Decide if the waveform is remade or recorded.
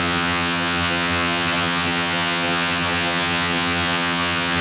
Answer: remade